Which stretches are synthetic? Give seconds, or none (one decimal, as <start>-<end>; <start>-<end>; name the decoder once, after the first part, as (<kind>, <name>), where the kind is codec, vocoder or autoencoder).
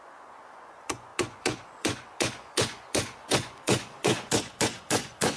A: 0.0-5.4 (vocoder, Vocos)